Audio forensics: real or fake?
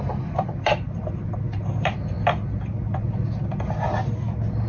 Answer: real